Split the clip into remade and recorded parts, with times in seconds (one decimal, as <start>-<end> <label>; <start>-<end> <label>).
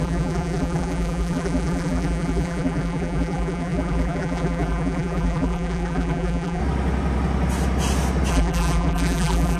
0.0-6.6 remade; 6.6-8.3 recorded; 8.3-9.6 remade